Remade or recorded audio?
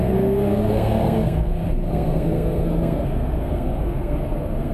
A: remade